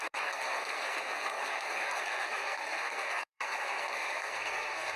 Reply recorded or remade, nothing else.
remade